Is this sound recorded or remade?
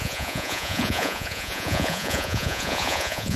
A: remade